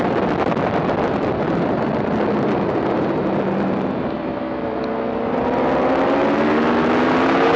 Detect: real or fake real